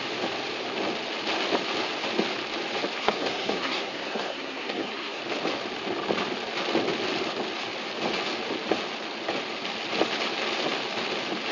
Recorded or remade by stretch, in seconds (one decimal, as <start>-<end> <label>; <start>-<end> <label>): 0.0-3.0 recorded; 3.0-5.2 remade; 5.2-11.5 recorded